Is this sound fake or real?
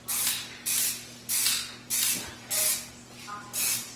real